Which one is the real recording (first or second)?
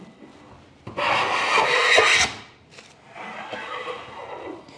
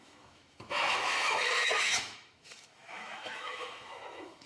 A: first